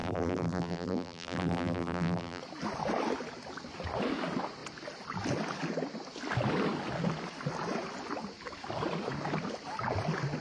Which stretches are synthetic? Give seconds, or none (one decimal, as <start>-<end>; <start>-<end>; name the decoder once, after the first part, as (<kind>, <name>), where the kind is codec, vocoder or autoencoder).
0.0-2.4 (vocoder, BigVGAN v2)